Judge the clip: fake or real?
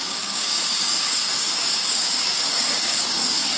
fake